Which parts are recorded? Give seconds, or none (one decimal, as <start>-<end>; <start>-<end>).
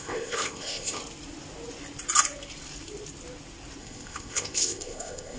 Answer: 1.0-3.8